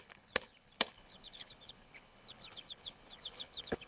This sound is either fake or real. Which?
fake